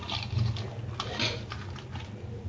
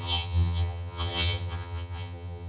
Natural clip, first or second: first